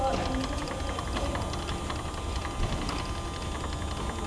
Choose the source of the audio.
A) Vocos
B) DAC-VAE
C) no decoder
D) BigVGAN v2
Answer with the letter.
C